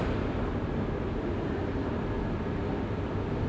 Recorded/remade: recorded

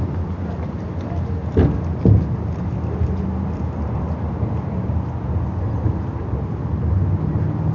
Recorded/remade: recorded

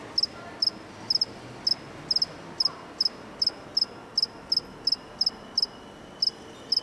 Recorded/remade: recorded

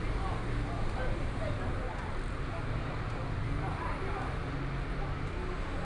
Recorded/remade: recorded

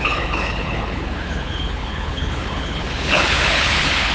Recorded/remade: remade